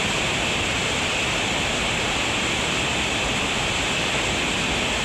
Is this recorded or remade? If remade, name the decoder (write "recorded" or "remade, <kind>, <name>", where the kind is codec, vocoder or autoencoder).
recorded